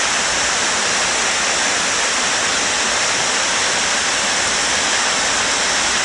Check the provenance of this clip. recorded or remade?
recorded